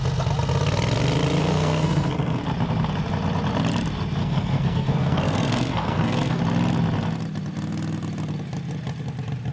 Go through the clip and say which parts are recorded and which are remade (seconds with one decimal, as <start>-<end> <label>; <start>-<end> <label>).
0.0-1.4 recorded; 1.4-2.4 remade; 2.4-4.2 recorded; 4.2-6.4 remade; 6.4-9.5 recorded